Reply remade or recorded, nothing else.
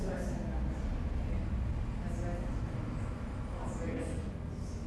recorded